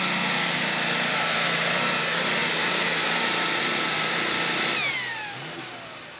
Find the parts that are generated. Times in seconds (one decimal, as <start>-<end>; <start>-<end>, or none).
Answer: none